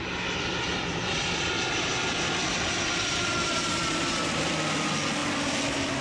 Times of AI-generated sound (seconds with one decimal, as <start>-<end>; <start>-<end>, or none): 0.7-1.5; 1.9-4.5